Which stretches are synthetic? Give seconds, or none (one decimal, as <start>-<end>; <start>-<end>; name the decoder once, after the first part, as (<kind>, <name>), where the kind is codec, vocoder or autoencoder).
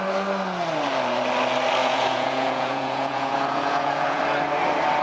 1.8-4.2 (vocoder, Vocos)